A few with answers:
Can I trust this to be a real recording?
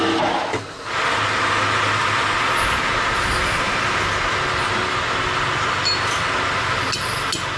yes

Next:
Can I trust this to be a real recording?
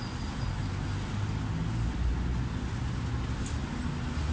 yes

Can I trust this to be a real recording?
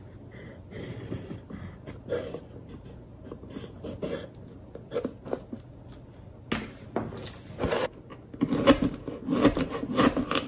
yes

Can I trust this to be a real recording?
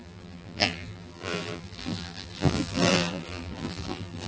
no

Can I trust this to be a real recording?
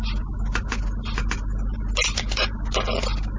yes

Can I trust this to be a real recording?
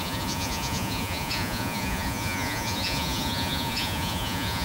no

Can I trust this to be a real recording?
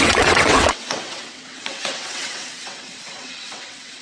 no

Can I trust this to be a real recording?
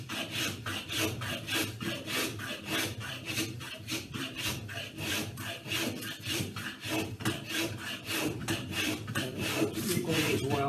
no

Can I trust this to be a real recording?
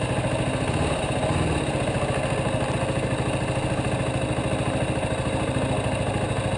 yes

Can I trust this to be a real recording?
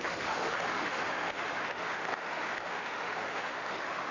no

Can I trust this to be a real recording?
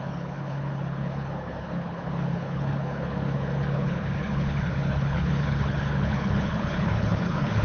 no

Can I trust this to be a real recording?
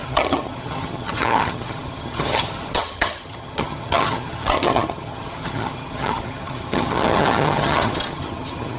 no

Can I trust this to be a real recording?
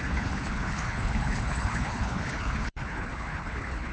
no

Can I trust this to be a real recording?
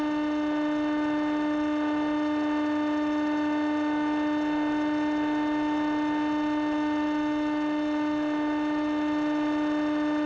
yes